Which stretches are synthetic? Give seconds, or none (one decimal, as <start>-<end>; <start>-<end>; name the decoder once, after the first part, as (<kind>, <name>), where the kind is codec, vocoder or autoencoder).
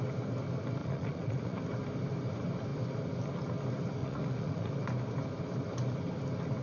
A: 0.8-1.6 (vocoder, Vocos); 4.0-4.7